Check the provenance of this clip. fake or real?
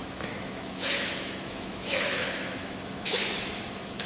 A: fake